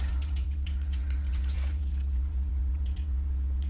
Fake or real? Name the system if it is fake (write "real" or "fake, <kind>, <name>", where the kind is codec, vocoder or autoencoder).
fake, vocoder, WaveNeXt